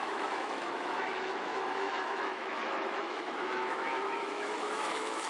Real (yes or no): no